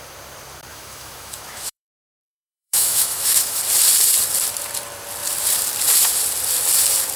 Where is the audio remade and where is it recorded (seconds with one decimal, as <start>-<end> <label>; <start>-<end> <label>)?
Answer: 0.0-0.7 recorded; 0.7-3.6 remade; 3.6-7.2 recorded